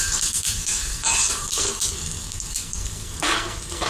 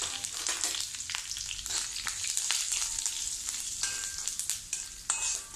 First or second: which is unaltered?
second